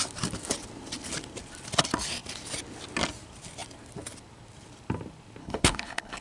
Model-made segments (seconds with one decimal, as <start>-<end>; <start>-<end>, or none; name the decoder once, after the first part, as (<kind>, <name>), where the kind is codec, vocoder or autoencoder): 5.4-6.2 (codec, HILCodec)